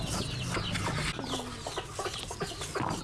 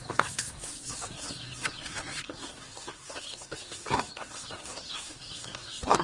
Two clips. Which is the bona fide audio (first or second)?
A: first